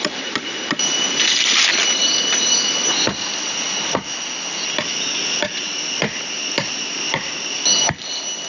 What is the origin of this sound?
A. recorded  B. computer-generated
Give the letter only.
A